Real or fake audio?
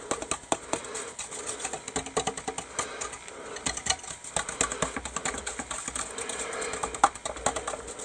real